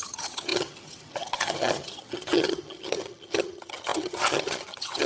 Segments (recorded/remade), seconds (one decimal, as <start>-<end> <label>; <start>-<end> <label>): 0.0-5.1 remade